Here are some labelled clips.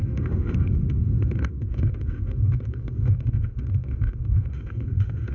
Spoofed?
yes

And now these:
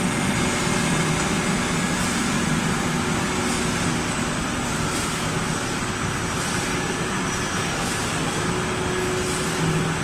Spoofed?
no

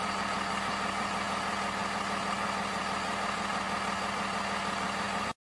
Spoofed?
no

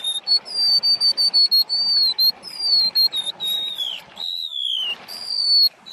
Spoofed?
no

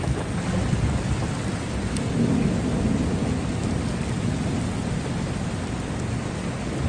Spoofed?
no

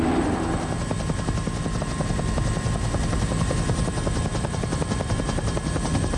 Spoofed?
no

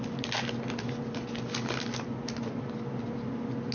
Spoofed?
no